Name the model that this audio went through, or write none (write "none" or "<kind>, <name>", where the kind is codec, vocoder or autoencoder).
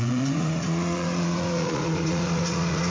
vocoder, Vocos